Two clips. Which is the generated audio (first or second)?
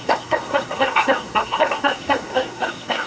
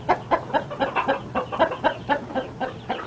first